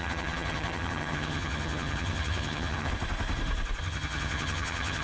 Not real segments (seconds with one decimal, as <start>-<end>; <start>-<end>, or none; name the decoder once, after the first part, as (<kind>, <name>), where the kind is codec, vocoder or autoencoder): 0.0-2.9 (vocoder, HiFi-GAN); 3.8-5.0